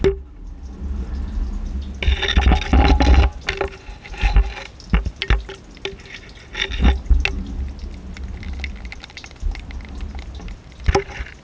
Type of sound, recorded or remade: recorded